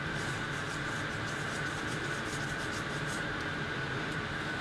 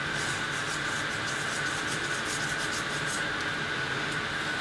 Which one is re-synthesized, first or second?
first